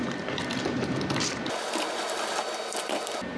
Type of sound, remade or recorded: remade